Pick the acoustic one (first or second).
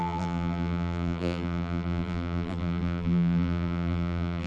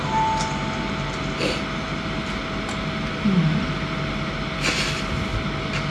second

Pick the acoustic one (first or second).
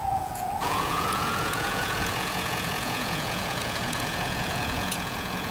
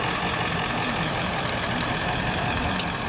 second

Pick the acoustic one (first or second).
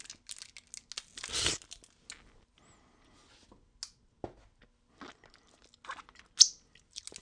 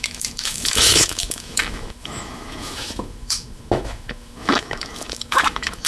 first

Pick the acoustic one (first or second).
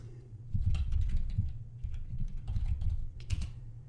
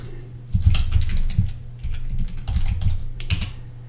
second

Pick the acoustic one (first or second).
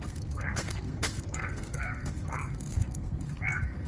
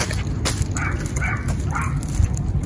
second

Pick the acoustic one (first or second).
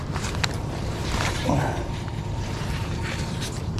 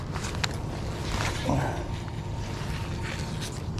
second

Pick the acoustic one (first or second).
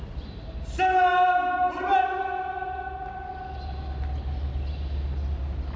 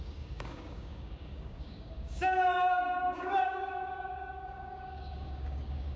first